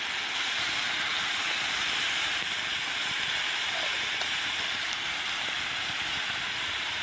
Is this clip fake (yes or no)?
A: yes